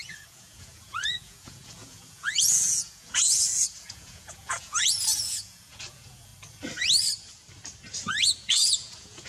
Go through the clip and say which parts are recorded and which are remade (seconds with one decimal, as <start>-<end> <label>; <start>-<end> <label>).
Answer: 0.0-6.3 remade; 6.3-8.4 recorded; 8.4-9.3 remade